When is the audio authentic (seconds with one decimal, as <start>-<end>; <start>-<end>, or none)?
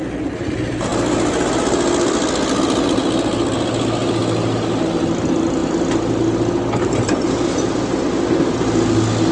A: 0.0-9.3